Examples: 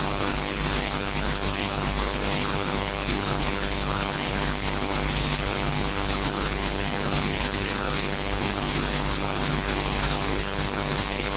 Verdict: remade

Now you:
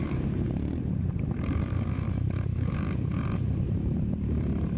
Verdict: remade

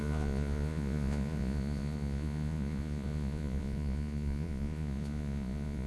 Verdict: remade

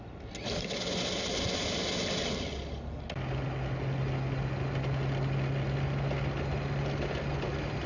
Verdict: recorded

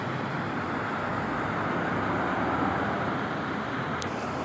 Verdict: recorded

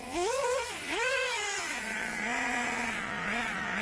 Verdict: remade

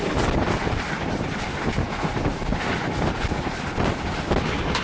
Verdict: recorded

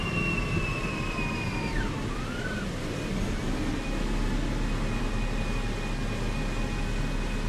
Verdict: recorded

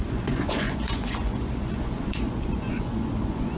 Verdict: remade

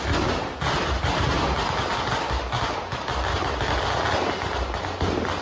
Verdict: recorded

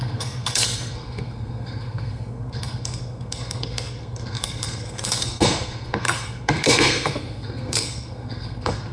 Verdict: remade